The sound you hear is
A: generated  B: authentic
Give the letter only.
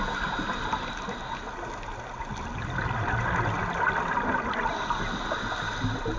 B